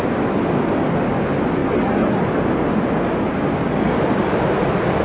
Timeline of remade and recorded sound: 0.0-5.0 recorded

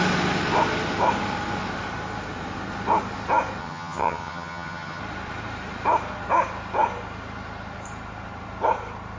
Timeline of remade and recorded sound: 0.0-3.6 recorded; 3.6-5.0 remade; 5.0-9.2 recorded

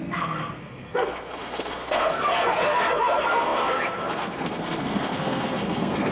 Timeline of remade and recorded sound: 0.0-6.1 remade

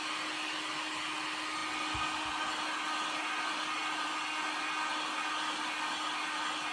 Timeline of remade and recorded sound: 0.0-6.7 recorded